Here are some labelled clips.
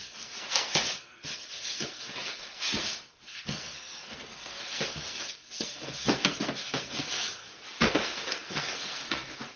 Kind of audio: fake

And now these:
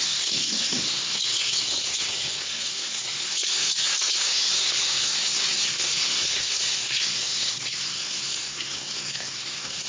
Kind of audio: fake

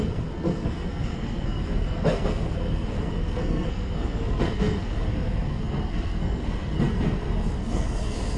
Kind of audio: fake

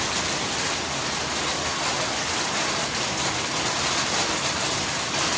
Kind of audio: real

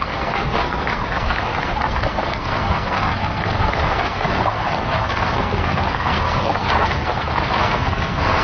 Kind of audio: fake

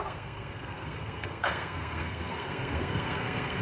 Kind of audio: fake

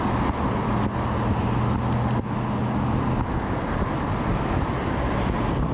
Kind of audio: real